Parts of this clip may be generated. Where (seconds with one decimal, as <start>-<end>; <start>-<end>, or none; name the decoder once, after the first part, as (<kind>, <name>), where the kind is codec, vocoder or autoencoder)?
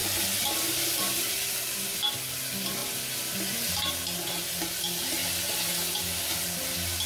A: none